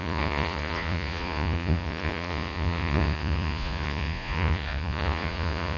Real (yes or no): no